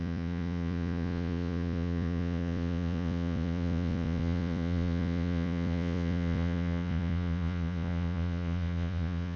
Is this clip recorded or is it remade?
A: remade